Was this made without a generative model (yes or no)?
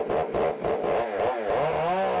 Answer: yes